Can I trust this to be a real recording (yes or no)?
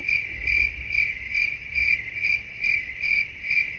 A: yes